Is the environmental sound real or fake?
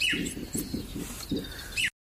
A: real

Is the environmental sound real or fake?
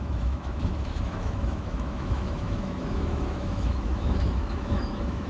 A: fake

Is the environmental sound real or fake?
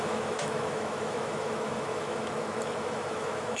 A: fake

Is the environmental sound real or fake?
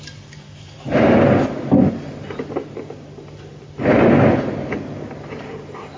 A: real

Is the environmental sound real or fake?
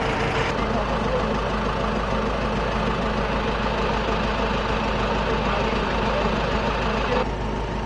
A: real